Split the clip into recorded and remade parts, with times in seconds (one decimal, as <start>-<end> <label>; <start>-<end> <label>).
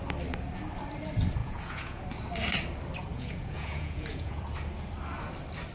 0.0-1.4 recorded; 1.4-2.0 remade; 2.0-3.1 recorded; 3.1-4.4 remade; 4.4-5.7 recorded